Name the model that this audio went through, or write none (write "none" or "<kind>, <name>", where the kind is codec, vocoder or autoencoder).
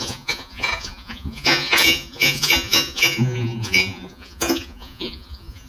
vocoder, Vocos